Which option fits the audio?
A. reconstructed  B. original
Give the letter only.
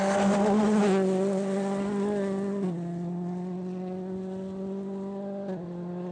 B